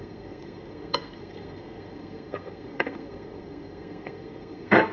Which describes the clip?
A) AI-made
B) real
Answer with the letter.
A